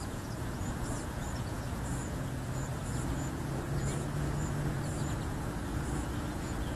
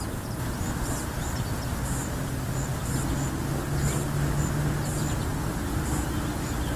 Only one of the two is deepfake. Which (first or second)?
first